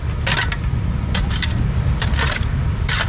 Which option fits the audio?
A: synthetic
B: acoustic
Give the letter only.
B